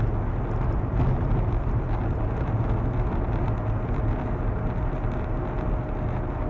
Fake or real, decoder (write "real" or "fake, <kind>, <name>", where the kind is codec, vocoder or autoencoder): real